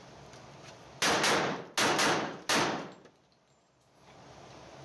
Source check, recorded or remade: recorded